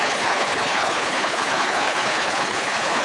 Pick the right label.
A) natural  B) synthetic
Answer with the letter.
B